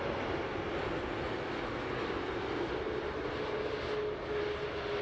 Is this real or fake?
real